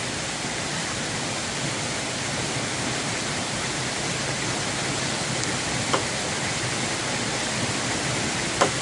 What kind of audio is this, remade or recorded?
remade